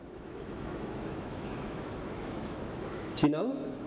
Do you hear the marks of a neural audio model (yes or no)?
yes